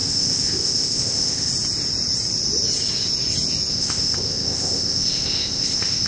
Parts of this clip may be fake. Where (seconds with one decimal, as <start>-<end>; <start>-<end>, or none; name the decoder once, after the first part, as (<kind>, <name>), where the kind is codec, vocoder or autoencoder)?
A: 0.0-1.5 (codec, ZipCodec); 3.7-6.1

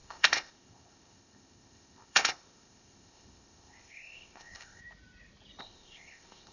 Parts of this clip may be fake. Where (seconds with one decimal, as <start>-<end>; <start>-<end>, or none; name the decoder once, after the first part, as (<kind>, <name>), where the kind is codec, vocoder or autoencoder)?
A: 0.0-4.8 (codec, ZipCodec); 5.6-6.5

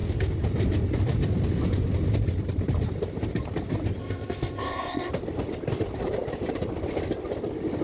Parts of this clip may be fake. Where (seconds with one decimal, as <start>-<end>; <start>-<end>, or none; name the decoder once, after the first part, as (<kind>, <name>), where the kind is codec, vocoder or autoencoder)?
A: 4.0-5.1 (codec, ZipCodec)